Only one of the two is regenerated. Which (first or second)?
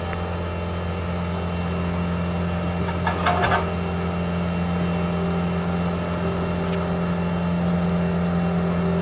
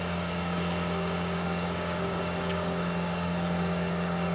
second